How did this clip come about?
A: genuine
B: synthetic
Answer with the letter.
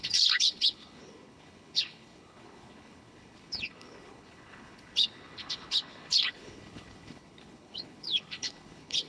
B